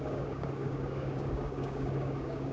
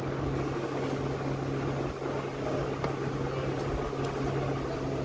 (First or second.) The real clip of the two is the second